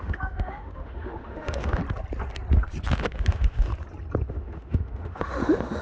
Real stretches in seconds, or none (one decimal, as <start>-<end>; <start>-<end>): 1.8-2.9; 3.7-4.3